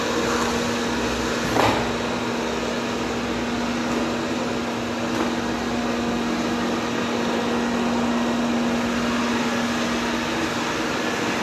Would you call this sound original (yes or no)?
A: yes